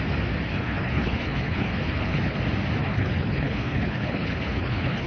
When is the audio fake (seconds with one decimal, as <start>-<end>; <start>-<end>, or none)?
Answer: 0.5-2.4; 2.8-5.1